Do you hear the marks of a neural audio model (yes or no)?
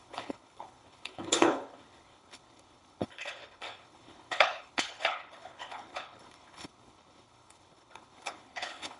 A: yes